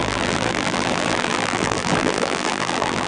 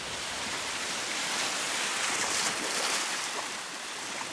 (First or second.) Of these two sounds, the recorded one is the second